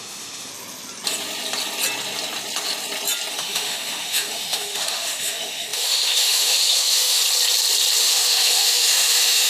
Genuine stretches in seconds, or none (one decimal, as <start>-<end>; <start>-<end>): 0.5-3.3; 7.2-8.0